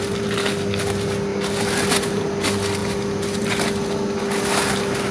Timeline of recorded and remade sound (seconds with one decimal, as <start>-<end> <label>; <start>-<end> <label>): 0.0-0.4 recorded; 0.4-0.9 remade; 0.9-5.1 recorded

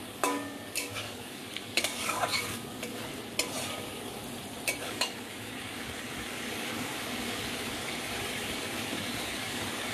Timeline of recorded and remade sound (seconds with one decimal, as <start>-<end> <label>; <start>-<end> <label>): 0.0-3.2 remade; 3.2-3.7 recorded; 3.7-4.2 remade; 4.2-4.8 recorded; 4.8-9.9 remade

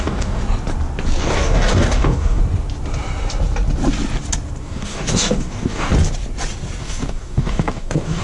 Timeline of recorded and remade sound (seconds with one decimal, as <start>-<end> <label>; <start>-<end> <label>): 0.0-0.4 remade; 0.4-1.2 recorded; 1.2-2.4 remade; 2.4-4.6 recorded; 4.6-5.9 remade; 5.9-6.8 recorded; 6.8-8.2 remade

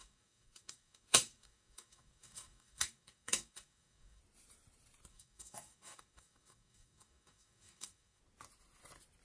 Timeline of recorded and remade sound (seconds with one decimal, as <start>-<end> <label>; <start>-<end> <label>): 0.0-4.2 remade; 4.2-5.1 recorded; 5.1-8.2 remade; 8.2-9.2 recorded

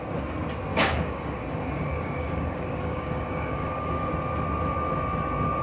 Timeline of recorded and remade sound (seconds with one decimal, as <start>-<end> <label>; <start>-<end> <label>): 0.0-0.7 recorded; 0.7-4.1 remade; 4.1-5.6 recorded

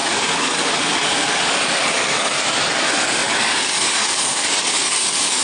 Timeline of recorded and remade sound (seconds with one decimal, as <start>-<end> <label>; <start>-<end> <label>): 0.0-5.4 remade

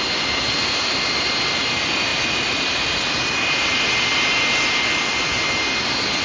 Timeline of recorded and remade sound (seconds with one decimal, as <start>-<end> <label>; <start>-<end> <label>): 0.0-6.2 recorded

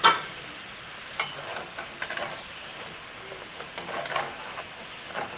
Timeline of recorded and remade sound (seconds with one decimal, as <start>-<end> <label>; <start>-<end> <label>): 0.0-5.4 recorded